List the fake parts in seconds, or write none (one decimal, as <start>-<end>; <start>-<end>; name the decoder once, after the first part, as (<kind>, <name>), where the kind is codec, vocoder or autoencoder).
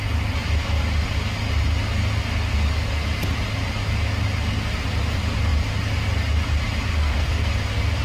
6.9-7.5 (codec, SNAC)